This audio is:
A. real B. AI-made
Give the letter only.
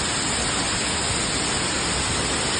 A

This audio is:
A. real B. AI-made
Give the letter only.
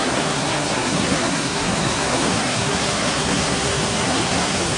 B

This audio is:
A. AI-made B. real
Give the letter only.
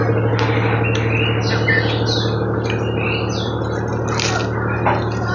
B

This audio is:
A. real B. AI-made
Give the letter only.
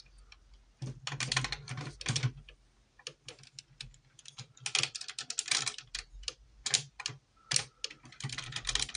A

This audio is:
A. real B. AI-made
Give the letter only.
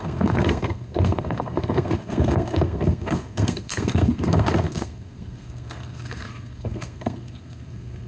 B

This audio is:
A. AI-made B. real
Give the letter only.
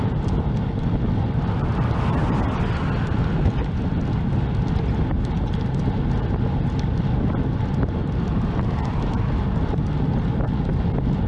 B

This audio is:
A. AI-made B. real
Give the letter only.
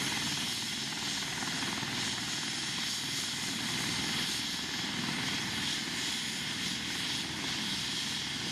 B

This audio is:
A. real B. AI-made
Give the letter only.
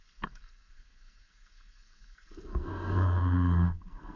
B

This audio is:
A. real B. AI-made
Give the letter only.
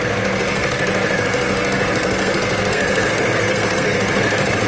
B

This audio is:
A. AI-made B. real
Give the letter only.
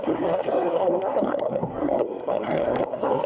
A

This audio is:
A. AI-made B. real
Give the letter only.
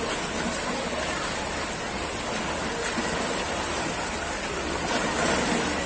B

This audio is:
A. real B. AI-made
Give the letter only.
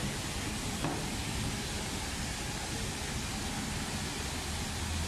A